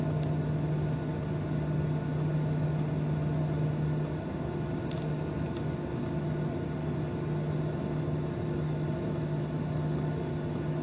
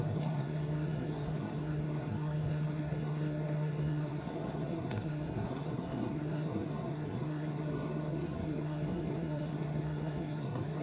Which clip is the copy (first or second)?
second